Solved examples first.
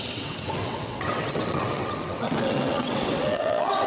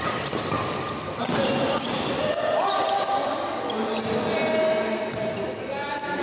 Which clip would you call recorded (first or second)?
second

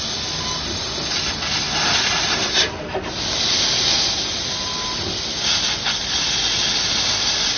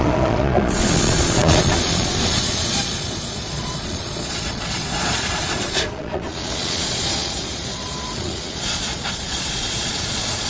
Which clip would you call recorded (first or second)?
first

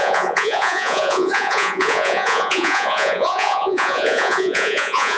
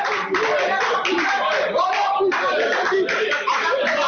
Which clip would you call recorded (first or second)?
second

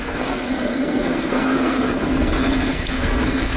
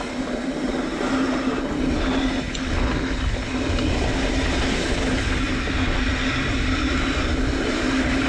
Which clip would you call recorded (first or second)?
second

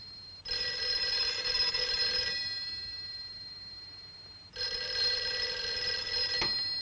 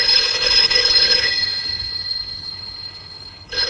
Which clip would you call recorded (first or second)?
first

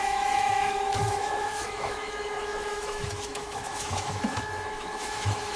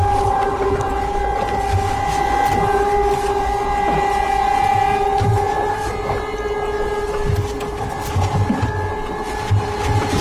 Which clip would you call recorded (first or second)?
second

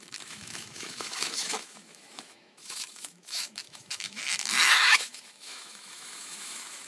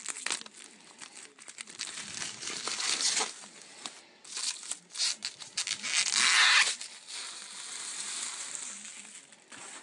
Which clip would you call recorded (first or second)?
second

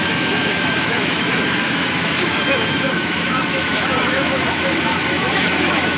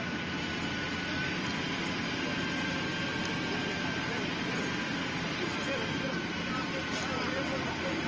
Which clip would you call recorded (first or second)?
second